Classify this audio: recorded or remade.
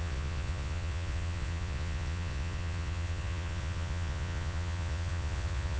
remade